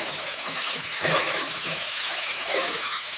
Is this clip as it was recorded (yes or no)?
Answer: no